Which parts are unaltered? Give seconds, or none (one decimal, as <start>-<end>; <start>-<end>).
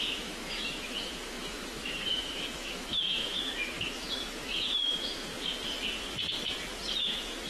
5.3-7.0